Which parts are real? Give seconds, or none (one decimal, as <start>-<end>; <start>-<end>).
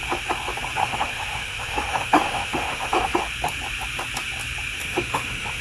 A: 0.0-0.8; 3.2-4.8